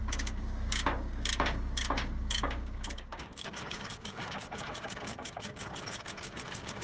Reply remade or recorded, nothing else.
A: remade